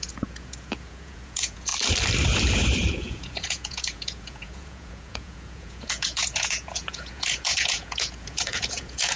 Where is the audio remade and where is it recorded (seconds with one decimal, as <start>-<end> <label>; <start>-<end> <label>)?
0.0-1.7 remade; 1.7-2.9 recorded; 2.9-9.2 remade